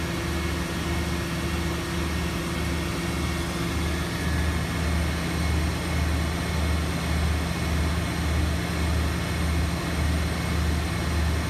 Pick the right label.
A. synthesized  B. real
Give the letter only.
B